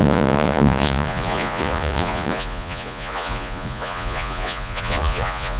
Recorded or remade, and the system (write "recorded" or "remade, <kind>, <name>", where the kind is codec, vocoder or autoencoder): remade, vocoder, Vocos